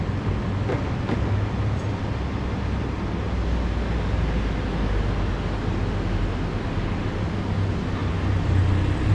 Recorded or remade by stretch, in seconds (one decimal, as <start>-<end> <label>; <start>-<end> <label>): 0.0-0.7 recorded; 0.7-1.3 remade; 1.3-9.1 recorded